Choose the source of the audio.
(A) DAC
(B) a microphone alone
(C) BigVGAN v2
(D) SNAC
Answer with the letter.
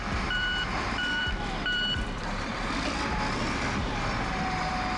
C